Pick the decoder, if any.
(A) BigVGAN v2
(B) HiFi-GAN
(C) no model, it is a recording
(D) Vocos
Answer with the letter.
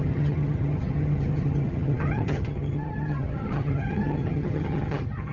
B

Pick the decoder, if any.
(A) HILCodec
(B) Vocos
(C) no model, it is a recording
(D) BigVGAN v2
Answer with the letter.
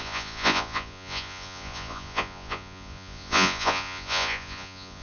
B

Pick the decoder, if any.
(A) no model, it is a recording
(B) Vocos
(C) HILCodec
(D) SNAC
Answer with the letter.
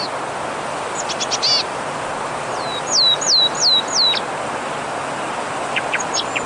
A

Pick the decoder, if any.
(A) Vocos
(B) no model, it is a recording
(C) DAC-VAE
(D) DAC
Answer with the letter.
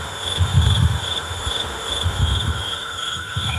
C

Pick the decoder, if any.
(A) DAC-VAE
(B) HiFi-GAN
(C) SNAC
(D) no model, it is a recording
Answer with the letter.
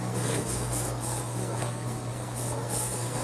C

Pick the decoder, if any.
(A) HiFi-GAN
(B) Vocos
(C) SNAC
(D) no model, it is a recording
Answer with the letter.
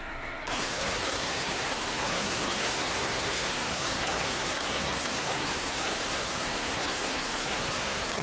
C